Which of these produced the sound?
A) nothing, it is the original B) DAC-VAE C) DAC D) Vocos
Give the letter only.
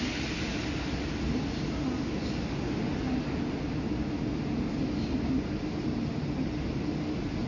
A